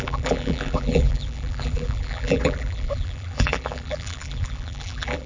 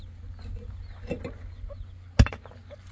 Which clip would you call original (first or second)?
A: second